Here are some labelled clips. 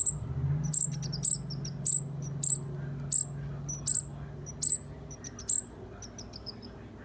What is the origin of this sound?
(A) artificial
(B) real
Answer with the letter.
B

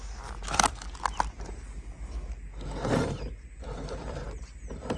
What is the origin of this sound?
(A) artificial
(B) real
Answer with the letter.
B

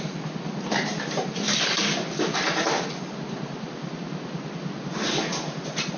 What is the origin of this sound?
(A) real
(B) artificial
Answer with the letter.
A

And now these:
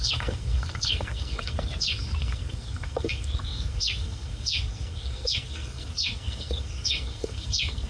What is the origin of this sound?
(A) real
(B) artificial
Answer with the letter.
B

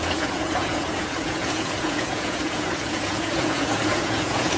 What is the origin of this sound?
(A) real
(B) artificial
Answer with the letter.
B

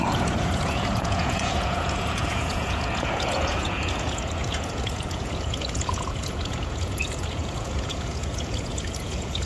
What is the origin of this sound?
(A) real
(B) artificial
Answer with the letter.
B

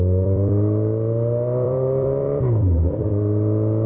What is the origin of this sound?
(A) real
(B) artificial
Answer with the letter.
B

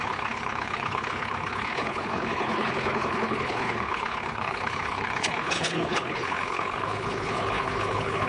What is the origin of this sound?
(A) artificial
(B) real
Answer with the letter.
A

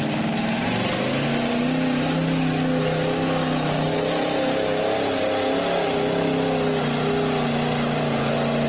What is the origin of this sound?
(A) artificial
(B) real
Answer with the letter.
B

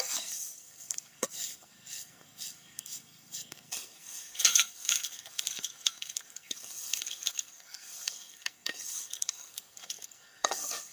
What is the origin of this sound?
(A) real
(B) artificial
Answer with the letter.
B